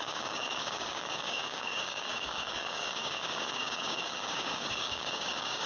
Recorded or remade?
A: remade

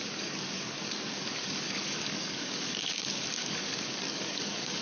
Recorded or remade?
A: remade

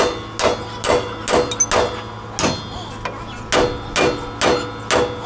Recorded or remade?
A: recorded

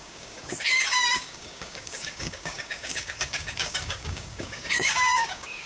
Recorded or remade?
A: remade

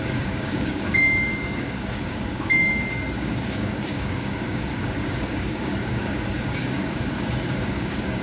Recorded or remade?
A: remade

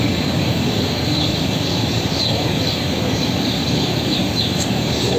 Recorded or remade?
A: remade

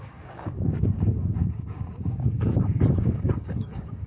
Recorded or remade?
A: remade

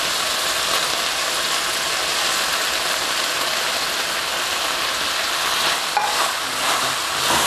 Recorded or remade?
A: recorded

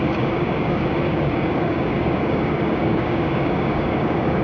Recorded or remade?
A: remade